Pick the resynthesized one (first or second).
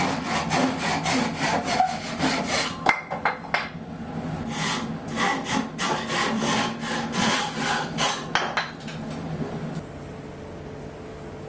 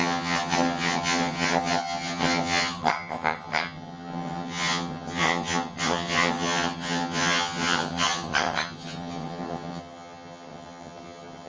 second